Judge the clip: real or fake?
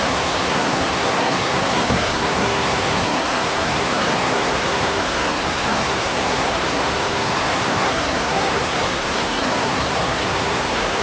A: fake